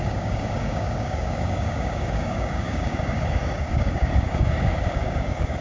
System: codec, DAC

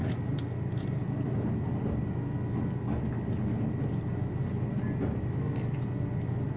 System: none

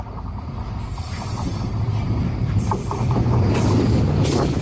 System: none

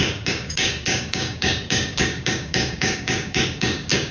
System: codec, DAC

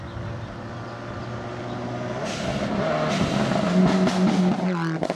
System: none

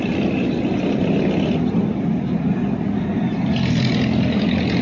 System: none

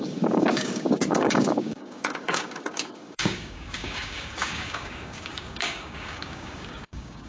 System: codec, DAC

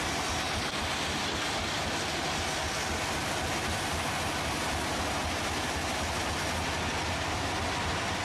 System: none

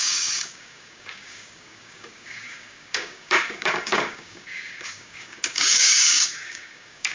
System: codec, DAC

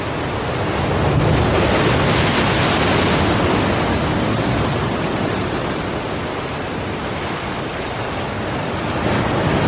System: none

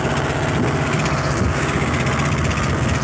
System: none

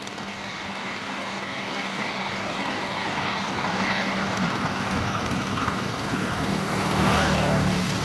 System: codec, DAC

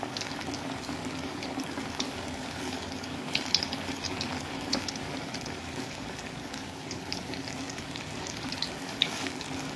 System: codec, DAC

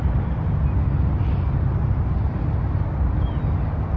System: none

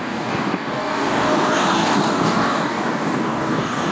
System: codec, DAC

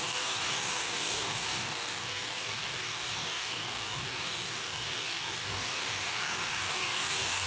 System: codec, DAC